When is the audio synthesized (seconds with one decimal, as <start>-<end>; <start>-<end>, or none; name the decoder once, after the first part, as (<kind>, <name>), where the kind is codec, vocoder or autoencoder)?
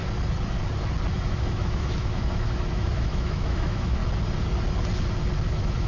1.2-4.0 (autoencoder, DAC-VAE); 5.5-5.9